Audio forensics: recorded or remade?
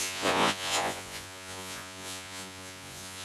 remade